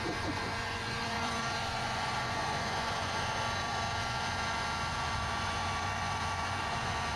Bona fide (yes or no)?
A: no